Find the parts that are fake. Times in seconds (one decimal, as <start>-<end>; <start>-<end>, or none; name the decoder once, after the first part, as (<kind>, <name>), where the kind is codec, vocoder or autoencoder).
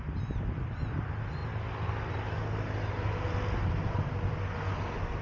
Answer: none